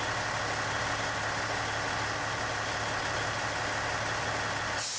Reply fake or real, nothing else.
real